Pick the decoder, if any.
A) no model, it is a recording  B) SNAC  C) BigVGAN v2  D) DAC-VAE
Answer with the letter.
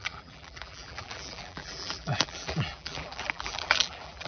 C